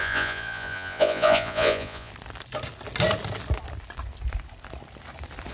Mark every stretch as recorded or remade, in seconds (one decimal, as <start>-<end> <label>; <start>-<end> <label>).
0.0-2.1 remade; 2.1-5.5 recorded